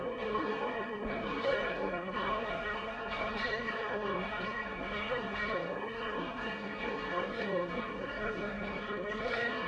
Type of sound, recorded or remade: remade